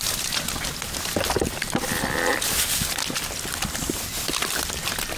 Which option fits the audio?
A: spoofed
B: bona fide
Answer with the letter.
B